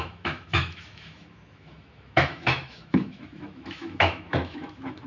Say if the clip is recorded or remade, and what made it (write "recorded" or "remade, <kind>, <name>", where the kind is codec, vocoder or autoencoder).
remade, autoencoder, DAC-VAE